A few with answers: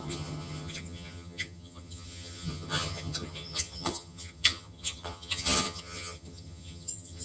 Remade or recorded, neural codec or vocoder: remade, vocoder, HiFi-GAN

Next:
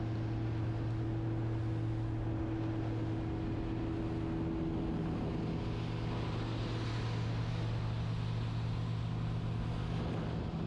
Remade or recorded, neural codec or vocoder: recorded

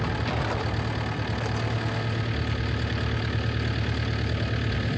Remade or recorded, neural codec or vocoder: recorded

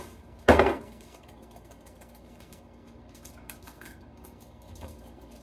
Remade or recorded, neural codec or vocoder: remade, codec, SNAC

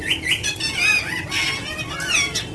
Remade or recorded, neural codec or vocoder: recorded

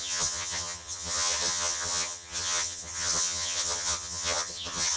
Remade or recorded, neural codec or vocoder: remade, vocoder, HiFi-GAN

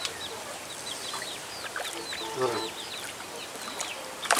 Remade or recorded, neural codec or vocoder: recorded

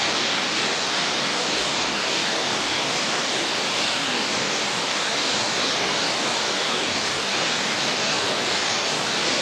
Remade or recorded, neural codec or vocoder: remade, codec, DAC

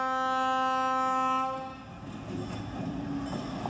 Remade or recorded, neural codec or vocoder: recorded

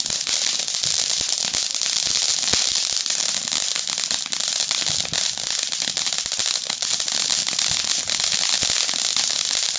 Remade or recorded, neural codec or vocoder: recorded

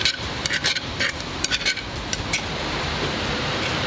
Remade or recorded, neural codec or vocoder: remade, vocoder, BigVGAN v2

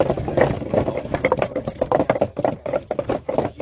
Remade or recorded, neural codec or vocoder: recorded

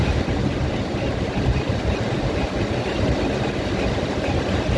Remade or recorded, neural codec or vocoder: recorded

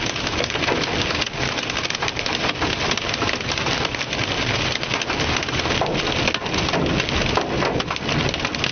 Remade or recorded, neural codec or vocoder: recorded